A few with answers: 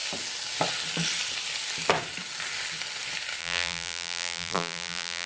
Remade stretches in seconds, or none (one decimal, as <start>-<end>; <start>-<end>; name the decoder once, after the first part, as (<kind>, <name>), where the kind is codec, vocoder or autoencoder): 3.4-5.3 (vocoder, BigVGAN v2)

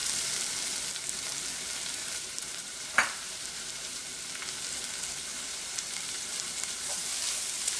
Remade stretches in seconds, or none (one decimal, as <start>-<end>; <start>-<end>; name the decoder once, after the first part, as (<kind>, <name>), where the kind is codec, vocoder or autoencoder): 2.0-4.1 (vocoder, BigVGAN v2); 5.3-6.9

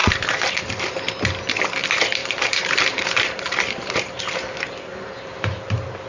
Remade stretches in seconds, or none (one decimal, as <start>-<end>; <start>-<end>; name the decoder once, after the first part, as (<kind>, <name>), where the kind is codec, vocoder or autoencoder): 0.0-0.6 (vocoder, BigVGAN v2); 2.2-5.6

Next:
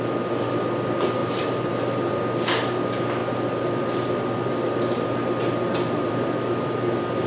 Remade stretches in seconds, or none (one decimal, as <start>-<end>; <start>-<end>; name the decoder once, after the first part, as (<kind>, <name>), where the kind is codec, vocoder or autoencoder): 1.2-1.8 (vocoder, BigVGAN v2)

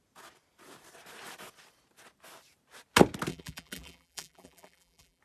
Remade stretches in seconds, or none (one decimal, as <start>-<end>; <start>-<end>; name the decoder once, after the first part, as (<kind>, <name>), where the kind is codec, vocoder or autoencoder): 3.3-5.2 (vocoder, BigVGAN v2)